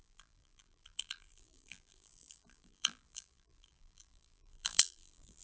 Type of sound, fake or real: fake